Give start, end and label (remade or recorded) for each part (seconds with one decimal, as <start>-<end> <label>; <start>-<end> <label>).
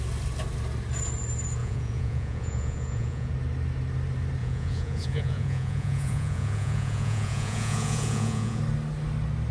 0.0-1.6 recorded; 1.6-3.3 remade; 3.3-4.4 recorded; 4.4-8.6 remade; 8.6-9.5 recorded